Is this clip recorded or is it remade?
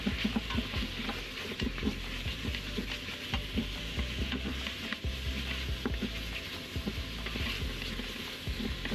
recorded